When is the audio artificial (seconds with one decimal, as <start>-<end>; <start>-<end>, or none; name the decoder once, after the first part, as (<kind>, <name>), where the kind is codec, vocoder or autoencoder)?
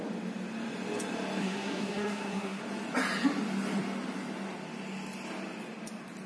1.4-2.6 (codec, SNAC)